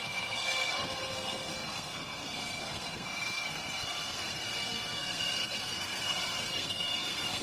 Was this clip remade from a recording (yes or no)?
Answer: yes